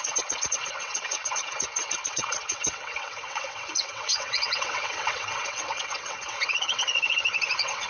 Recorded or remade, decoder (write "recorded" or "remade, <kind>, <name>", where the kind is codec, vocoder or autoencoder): remade, vocoder, WaveNeXt